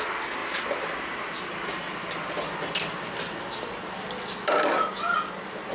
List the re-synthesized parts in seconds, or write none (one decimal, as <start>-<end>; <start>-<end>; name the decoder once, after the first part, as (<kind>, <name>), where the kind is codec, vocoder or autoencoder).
none